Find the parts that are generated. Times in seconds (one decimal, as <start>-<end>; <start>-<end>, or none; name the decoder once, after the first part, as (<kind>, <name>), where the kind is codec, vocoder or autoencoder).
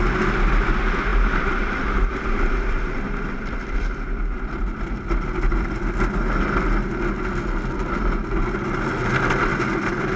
1.1-5.7 (vocoder, BigVGAN v2)